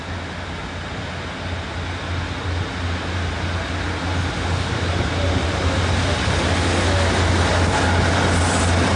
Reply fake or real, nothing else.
real